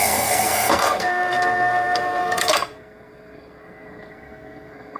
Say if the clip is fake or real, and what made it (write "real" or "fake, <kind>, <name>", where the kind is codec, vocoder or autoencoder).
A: fake, codec, SNAC